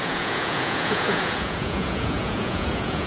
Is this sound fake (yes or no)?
yes